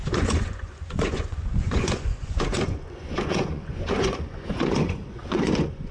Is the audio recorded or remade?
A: remade